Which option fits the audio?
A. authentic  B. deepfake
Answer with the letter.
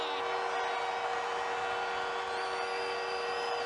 A